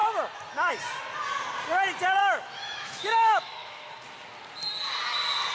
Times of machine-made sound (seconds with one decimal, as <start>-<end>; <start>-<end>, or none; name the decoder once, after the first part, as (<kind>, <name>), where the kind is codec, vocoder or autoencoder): 2.2-3.9 (autoencoder, DAC-VAE)

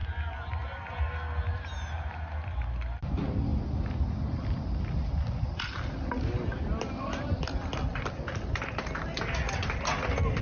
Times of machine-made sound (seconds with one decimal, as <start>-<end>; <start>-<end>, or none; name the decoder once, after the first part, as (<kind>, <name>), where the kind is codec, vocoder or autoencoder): none